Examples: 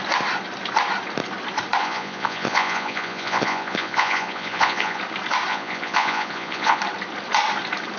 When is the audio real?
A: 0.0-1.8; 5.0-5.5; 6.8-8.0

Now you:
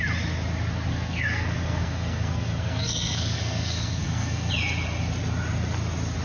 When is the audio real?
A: 0.0-0.9; 4.5-6.2

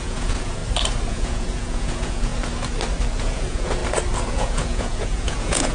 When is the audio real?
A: 0.6-1.1; 2.3-3.2; 3.8-4.3

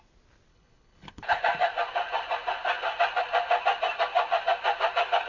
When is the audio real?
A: 0.0-0.5; 1.4-5.3

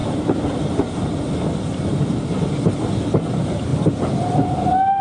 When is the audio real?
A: 0.0-5.0

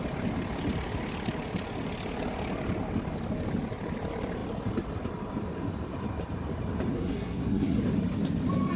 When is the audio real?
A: 0.0-6.9; 7.8-8.8